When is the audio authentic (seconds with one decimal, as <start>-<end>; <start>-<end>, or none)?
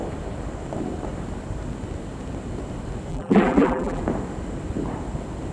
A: 0.0-3.1; 4.0-5.5